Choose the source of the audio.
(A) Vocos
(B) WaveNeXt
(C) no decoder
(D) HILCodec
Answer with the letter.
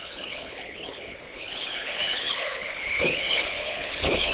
D